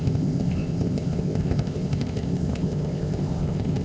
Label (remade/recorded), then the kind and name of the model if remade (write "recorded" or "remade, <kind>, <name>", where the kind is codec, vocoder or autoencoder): remade, codec, ZipCodec